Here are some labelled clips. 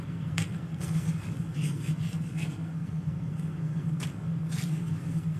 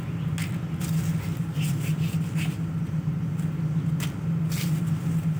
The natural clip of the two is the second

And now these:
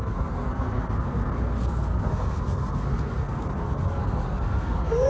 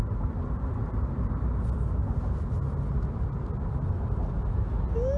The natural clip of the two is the second